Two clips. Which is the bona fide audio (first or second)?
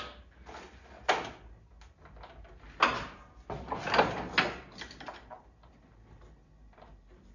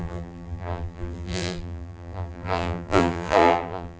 first